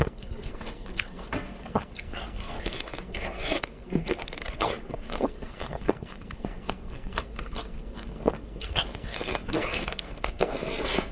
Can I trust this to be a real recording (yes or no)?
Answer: no